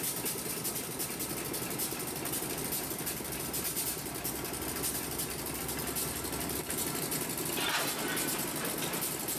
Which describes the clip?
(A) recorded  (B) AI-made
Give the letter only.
A